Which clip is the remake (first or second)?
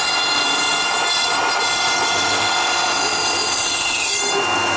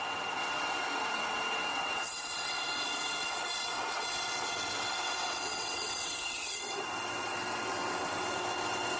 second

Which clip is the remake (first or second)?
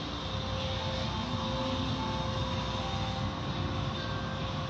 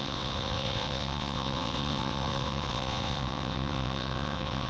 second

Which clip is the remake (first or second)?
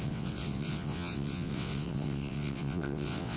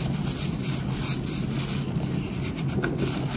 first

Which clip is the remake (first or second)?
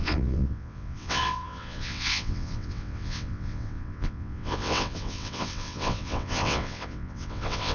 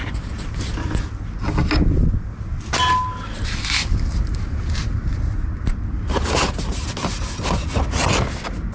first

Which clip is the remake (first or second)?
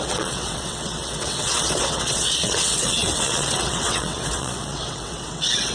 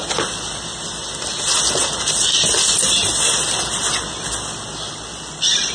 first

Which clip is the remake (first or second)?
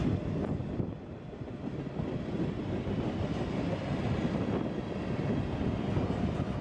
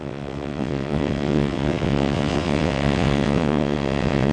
second